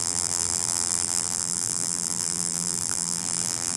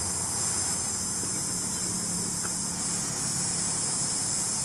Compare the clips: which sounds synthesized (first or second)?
first